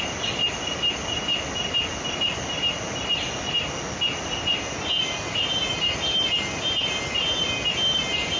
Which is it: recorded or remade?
recorded